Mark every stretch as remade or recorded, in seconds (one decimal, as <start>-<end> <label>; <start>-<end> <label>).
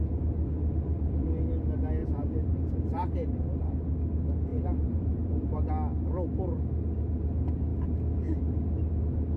0.0-2.0 recorded; 2.0-3.6 remade; 3.6-4.5 recorded; 4.5-5.7 remade; 5.7-9.4 recorded